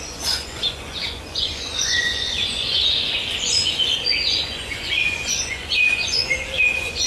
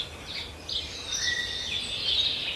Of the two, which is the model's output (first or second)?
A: first